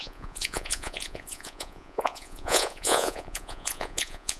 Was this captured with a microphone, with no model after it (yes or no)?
no